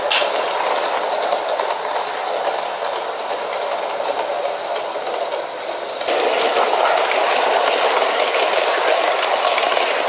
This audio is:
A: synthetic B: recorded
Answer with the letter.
B